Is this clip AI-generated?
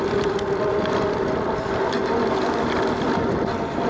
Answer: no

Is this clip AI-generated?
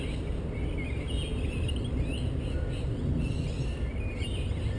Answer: no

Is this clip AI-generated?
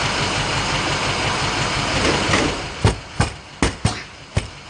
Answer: no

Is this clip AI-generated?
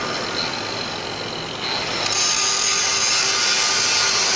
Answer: no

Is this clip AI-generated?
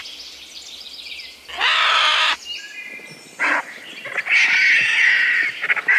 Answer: no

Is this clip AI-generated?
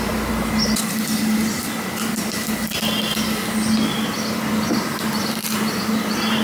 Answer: no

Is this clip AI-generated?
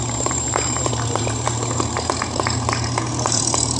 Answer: yes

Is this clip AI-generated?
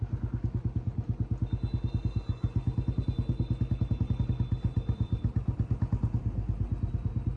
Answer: no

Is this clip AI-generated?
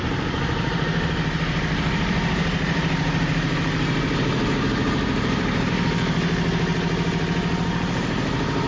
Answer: yes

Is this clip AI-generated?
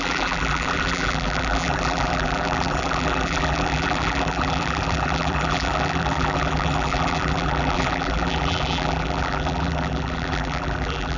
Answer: yes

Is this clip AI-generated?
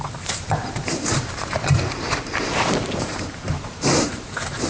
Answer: yes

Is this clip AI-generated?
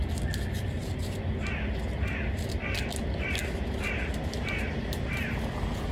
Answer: no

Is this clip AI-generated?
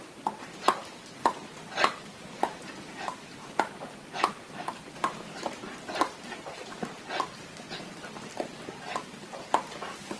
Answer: no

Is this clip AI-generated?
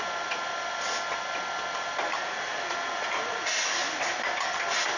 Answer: no